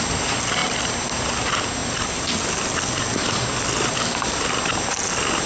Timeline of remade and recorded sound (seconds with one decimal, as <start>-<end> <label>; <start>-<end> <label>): 0.0-5.5 recorded